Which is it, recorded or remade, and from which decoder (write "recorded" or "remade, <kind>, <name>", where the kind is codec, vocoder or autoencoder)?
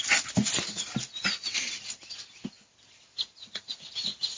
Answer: recorded